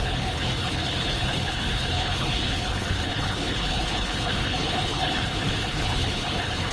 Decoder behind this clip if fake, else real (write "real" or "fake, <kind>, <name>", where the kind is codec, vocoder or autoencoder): fake, codec, HILCodec